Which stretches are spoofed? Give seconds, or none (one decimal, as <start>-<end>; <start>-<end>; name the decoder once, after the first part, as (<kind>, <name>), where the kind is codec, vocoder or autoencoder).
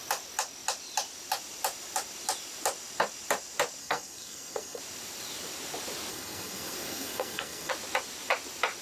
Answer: 3.8-4.8 (codec, SNAC); 6.1-7.7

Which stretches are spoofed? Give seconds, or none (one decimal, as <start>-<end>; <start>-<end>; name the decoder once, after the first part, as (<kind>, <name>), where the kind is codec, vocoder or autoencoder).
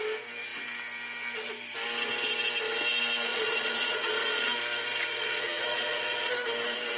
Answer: 3.3-4.1 (vocoder, Vocos); 4.9-6.3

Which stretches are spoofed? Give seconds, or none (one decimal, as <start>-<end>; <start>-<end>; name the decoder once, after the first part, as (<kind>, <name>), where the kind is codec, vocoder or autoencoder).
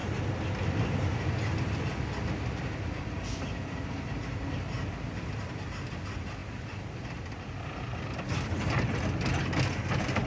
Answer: none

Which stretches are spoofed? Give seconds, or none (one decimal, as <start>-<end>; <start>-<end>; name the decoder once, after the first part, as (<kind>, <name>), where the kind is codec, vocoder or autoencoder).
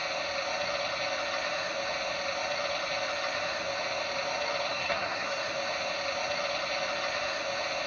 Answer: 4.7-5.4 (codec, SNAC)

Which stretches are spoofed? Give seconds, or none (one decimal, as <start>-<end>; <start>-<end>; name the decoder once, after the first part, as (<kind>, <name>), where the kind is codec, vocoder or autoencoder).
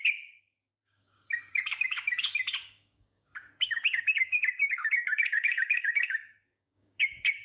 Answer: 0.0-7.4 (codec, DAC)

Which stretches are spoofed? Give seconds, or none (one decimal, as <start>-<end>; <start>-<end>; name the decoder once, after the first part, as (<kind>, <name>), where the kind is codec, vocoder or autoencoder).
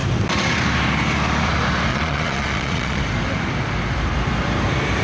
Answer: 1.9-3.0 (vocoder, Vocos)